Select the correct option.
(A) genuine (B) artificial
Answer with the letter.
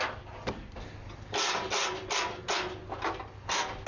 A